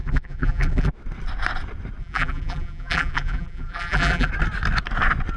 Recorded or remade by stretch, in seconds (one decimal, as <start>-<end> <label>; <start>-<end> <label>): 0.0-0.9 remade; 0.9-2.0 recorded; 2.0-4.3 remade; 4.3-5.4 recorded